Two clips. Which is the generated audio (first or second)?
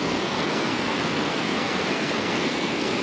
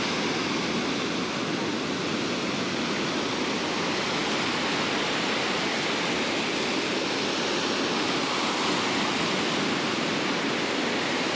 first